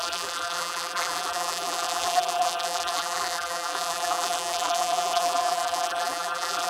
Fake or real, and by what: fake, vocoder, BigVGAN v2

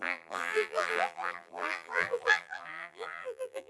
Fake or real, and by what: fake, vocoder, BigVGAN v2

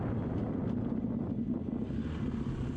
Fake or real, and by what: real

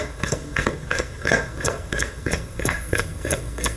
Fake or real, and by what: fake, codec, SNAC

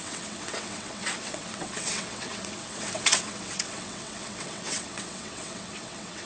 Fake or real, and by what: fake, vocoder, WaveNeXt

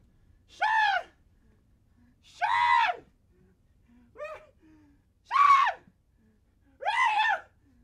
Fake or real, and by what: real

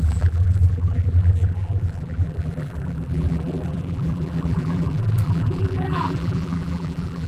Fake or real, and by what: fake, vocoder, BigVGAN v2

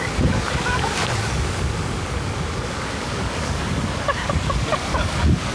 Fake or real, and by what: fake, codec, DAC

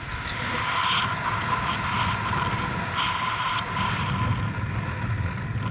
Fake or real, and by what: real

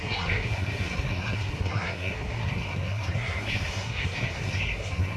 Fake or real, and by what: fake, codec, SNAC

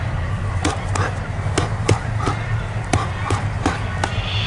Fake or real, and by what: real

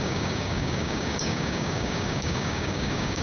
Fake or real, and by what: fake, codec, DAC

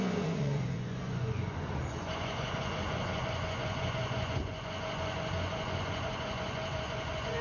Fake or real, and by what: fake, vocoder, Vocos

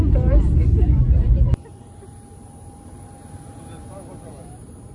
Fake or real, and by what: fake, vocoder, BigVGAN v2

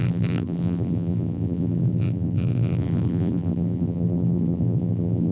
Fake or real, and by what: fake, vocoder, BigVGAN v2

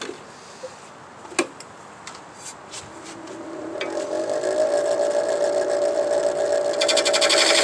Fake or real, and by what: real